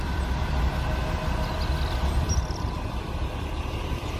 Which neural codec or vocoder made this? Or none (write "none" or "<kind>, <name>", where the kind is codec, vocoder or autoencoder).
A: none